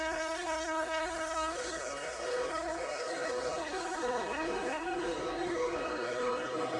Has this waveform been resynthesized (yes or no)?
yes